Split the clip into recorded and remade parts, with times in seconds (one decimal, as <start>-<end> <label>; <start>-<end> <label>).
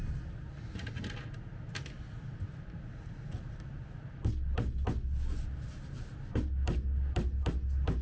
0.0-8.0 recorded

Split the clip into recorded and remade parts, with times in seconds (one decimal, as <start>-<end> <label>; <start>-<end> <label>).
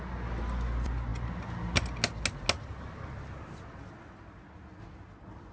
0.0-5.5 recorded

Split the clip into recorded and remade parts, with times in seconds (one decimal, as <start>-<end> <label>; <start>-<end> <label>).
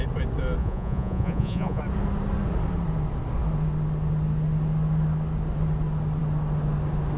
0.0-0.6 recorded; 0.6-1.8 remade; 1.8-7.2 recorded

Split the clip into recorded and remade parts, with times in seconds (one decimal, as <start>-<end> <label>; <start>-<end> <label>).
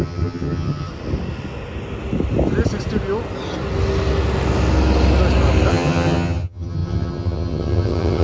0.0-0.9 remade; 0.9-5.7 recorded; 5.7-8.2 remade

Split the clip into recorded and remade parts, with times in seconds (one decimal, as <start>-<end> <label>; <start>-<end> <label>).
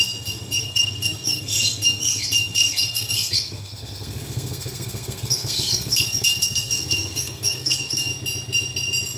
0.0-8.1 remade; 8.1-9.2 recorded